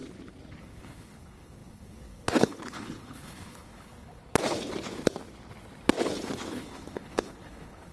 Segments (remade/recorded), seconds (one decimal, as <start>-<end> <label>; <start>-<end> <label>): 0.0-0.6 recorded; 0.6-4.2 remade; 4.2-6.5 recorded; 6.5-7.9 remade